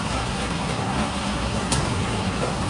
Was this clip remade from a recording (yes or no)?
yes